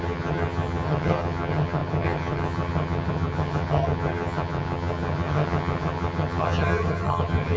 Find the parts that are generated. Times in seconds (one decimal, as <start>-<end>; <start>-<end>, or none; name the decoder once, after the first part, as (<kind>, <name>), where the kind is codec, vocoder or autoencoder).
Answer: 0.0-7.6 (vocoder, HiFi-GAN)